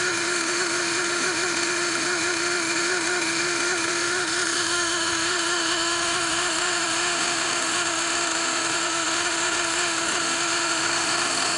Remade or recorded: remade